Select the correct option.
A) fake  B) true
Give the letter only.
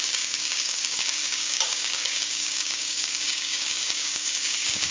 A